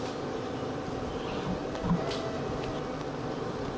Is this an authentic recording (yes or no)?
yes